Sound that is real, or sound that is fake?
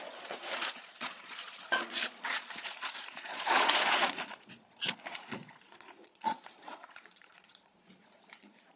fake